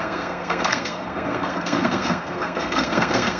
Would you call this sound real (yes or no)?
no